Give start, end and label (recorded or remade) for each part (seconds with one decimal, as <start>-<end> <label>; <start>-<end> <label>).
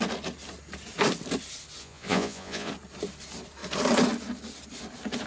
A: 0.0-1.8 recorded; 1.8-2.7 remade; 2.7-5.3 recorded